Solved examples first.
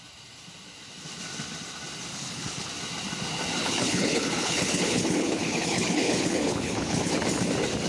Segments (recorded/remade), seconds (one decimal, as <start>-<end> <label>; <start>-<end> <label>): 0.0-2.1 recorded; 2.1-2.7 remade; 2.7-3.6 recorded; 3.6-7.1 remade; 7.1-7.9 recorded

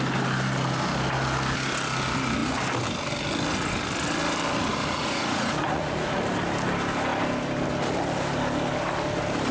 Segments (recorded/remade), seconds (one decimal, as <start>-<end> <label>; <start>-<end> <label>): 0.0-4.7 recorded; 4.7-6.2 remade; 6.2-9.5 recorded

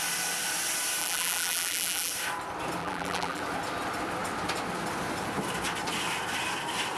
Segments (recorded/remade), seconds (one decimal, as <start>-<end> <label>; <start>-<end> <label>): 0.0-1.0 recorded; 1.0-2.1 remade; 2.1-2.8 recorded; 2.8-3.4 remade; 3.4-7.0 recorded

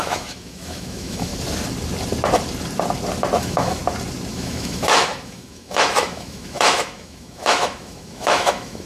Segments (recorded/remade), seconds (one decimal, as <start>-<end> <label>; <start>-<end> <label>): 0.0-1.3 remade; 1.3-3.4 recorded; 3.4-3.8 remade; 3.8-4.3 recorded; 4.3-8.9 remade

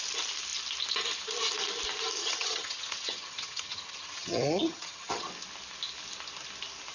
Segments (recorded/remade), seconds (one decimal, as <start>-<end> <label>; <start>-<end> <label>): 0.0-2.2 recorded; 2.2-5.3 remade; 5.3-6.9 recorded

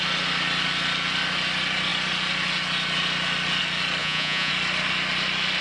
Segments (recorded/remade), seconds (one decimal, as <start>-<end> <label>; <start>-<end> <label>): 0.0-4.0 recorded; 4.0-4.5 remade; 4.5-5.6 recorded